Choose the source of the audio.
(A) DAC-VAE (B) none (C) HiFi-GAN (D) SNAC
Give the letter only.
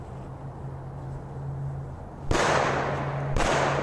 B